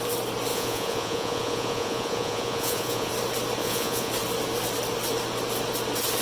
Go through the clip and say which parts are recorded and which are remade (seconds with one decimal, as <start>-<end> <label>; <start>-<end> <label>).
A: 0.0-0.5 recorded; 0.5-3.1 remade; 3.1-3.6 recorded; 3.6-4.1 remade; 4.1-6.2 recorded